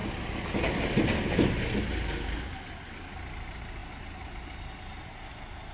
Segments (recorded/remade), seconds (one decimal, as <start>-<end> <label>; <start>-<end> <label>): 0.0-5.7 recorded